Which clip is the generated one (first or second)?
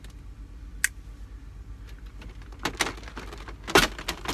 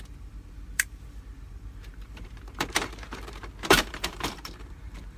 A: second